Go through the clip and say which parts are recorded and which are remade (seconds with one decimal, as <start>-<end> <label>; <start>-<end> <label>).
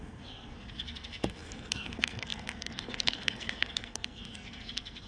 0.0-5.1 remade